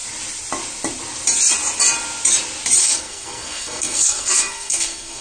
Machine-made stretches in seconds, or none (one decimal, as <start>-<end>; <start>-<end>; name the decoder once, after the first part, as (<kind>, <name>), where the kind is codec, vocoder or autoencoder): 2.8-5.2 (codec, SNAC)